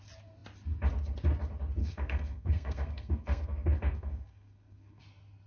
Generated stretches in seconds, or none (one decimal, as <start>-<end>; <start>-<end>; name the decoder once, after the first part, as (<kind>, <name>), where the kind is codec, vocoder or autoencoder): 1.8-5.0 (codec, SNAC)